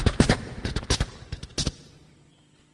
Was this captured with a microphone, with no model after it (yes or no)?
yes